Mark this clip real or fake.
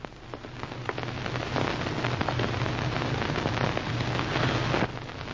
real